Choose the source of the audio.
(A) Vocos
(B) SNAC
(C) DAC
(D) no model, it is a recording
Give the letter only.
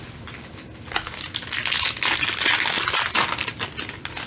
D